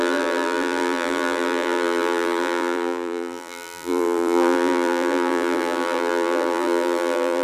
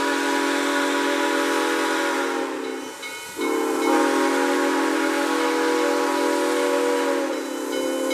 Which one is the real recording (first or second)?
second